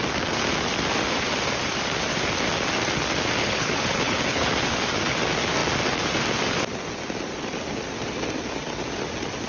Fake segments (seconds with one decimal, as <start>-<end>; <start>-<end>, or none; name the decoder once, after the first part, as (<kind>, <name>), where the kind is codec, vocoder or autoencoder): 3.4-4.5 (codec, HILCodec)